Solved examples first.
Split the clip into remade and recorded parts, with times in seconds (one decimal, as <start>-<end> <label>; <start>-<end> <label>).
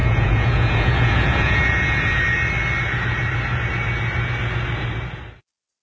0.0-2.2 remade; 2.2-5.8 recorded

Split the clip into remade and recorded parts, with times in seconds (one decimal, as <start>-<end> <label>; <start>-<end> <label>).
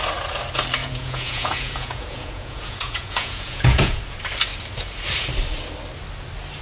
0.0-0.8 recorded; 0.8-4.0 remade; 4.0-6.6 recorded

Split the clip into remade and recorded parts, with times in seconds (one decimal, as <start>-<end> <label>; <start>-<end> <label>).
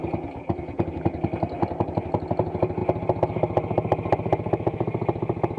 0.0-5.6 recorded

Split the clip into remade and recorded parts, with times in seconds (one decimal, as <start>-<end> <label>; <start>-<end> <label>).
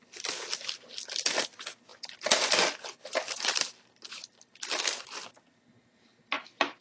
0.0-6.8 recorded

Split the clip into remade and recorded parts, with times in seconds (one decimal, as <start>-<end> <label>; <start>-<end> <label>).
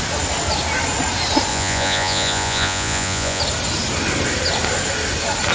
0.0-1.5 recorded; 1.5-3.4 remade; 3.4-5.5 recorded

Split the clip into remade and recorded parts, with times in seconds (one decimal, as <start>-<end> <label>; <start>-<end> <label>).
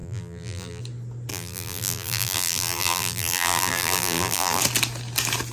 0.0-0.8 remade; 0.8-1.3 recorded; 1.3-4.6 remade; 4.6-5.5 recorded